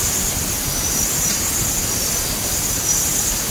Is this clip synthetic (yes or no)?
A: no